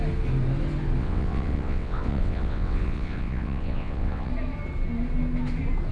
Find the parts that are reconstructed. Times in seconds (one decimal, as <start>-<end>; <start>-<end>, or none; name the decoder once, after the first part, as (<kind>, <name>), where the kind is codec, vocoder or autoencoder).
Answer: 1.0-4.3 (vocoder, WaveNeXt)